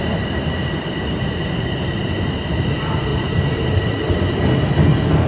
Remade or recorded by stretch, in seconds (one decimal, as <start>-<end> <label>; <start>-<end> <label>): 0.0-1.1 recorded; 1.1-2.0 remade; 2.0-3.1 recorded; 3.1-4.0 remade; 4.0-5.3 recorded